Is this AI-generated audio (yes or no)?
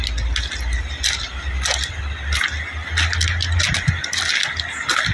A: no